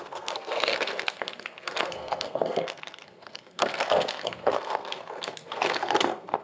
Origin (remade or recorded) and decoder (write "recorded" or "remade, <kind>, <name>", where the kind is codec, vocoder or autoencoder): remade, codec, SNAC